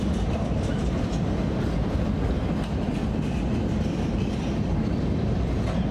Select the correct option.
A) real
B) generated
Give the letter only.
A